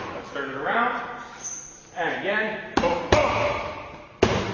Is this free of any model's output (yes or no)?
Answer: yes